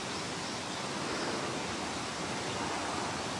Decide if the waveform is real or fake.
fake